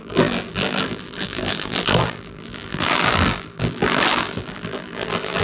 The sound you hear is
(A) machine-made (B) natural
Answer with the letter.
A